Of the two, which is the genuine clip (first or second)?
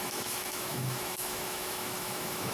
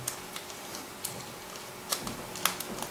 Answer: second